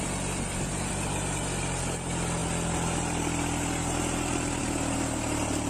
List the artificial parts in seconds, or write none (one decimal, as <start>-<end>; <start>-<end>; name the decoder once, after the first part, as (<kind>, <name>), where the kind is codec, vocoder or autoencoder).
none